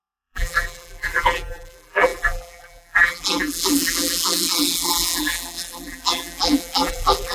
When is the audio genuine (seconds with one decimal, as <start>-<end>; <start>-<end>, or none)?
none